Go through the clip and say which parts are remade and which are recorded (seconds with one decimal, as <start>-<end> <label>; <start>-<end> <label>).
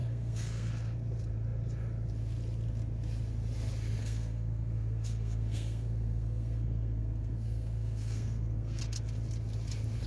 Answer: 0.0-0.7 remade; 0.7-4.0 recorded; 4.0-8.8 remade; 8.8-10.1 recorded